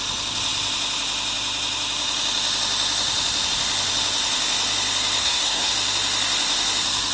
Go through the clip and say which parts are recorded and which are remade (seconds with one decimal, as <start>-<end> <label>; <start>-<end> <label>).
0.0-5.2 recorded; 5.2-5.7 remade; 5.7-7.1 recorded